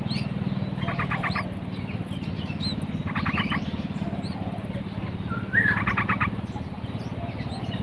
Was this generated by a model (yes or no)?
no